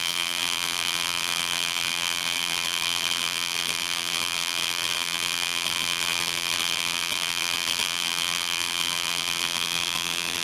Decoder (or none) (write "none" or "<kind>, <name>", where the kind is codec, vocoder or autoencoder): vocoder, BigVGAN v2